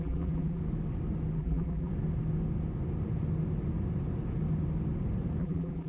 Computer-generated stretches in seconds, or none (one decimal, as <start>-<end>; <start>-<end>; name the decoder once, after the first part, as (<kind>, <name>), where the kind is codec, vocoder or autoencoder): 0.0-0.6 (vocoder, BigVGAN v2); 1.4-1.9; 5.4-5.9